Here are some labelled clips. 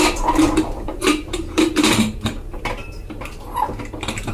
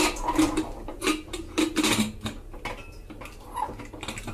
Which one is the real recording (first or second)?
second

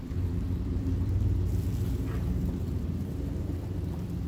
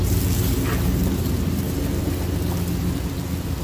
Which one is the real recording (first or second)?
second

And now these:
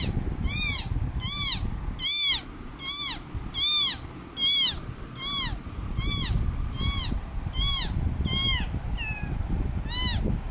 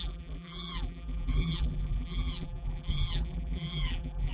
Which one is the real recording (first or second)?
first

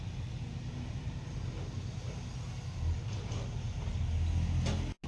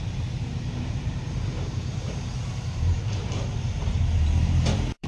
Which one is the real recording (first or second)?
first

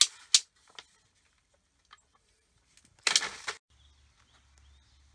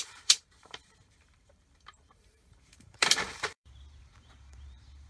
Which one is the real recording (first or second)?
first